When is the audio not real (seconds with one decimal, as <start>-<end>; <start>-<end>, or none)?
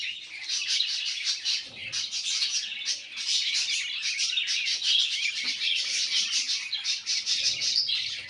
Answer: none